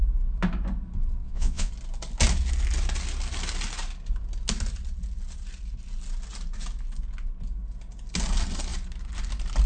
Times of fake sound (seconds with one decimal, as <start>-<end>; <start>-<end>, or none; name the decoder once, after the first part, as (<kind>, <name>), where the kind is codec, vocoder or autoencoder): 1.2-1.7 (vocoder, Vocos)